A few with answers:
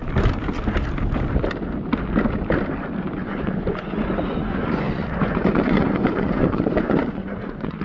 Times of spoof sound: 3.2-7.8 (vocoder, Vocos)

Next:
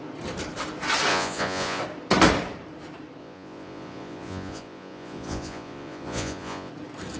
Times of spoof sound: 1.1-1.8 (vocoder, Vocos); 3.2-6.7

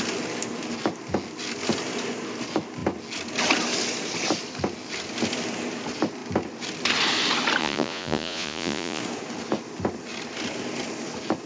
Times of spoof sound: 7.6-9.0 (vocoder, Vocos)

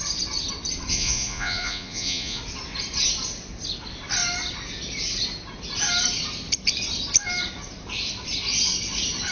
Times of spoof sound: 0.9-2.4 (vocoder, Vocos)

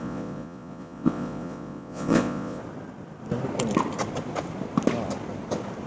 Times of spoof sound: 0.0-2.6 (vocoder, Vocos)

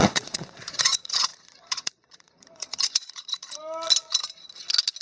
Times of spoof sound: 0.0-3.6 (vocoder, Vocos)